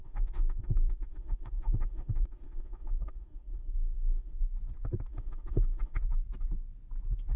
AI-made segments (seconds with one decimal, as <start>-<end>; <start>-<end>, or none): 0.0-4.4; 5.1-6.0